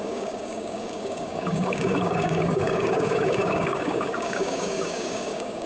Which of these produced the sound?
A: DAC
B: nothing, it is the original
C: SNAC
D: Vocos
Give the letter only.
A